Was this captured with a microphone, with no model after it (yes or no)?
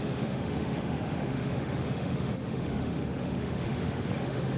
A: no